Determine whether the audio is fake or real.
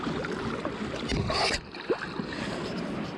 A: real